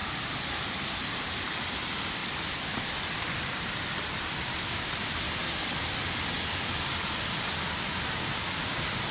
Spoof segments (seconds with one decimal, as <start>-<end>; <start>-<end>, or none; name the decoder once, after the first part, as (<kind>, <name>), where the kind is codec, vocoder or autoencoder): 0.0-9.1 (vocoder, BigVGAN v2)